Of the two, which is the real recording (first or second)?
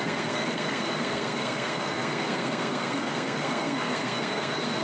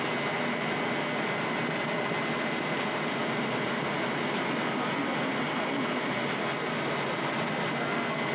second